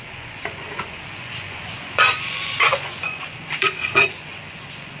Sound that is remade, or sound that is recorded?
remade